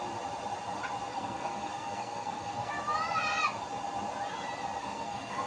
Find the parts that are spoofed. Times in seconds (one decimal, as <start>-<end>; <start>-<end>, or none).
1.1-2.7; 4.8-5.5